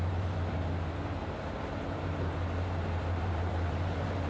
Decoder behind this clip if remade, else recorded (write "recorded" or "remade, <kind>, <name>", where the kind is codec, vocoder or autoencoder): remade, vocoder, BigVGAN v2